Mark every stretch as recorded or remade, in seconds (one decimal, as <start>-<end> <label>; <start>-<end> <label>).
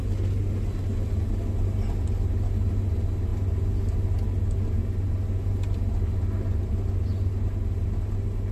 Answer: 0.0-8.5 recorded